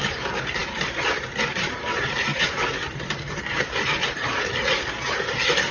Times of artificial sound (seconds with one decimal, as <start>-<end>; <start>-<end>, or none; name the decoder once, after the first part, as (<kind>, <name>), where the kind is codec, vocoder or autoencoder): 0.0-5.7 (vocoder, BigVGAN v2)